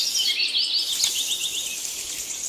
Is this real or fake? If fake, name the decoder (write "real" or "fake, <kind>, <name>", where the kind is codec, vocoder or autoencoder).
real